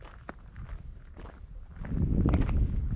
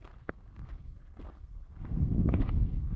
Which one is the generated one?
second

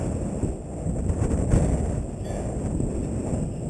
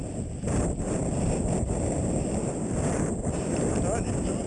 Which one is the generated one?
second